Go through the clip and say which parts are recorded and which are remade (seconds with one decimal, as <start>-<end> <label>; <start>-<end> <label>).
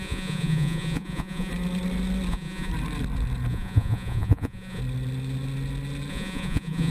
0.0-1.5 remade; 1.5-2.3 recorded; 2.3-2.7 remade; 2.7-3.5 recorded; 3.5-4.8 remade; 4.8-6.1 recorded; 6.1-6.9 remade